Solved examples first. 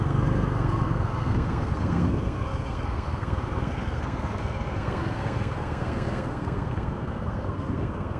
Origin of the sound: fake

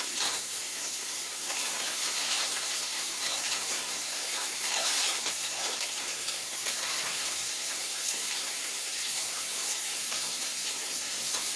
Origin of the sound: fake